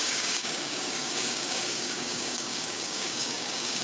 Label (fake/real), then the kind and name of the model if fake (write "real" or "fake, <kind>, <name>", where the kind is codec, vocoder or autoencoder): fake, codec, DAC